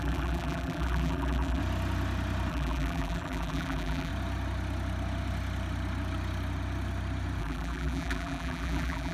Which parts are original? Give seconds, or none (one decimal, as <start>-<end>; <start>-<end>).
1.6-2.5; 4.1-7.4